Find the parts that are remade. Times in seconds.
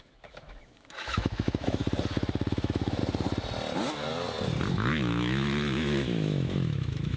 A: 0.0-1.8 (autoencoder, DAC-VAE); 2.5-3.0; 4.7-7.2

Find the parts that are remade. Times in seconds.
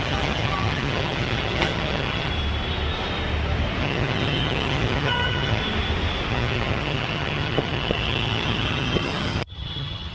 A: 0.0-2.3 (vocoder, HiFi-GAN); 3.8-5.6; 6.3-10.1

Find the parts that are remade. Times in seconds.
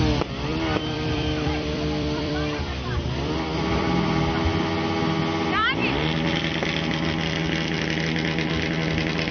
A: 0.5-4.4 (vocoder, BigVGAN v2)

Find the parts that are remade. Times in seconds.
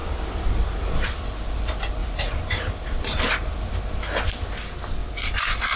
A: 2.0-3.7 (vocoder, BigVGAN v2); 5.0-5.8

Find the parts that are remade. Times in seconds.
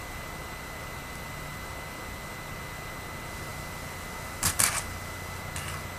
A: none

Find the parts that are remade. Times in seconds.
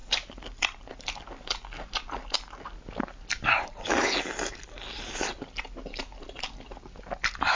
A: none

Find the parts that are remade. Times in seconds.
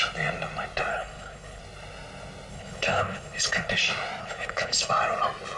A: 0.9-1.6 (codec, HILCodec); 2.5-3.7; 4.2-4.9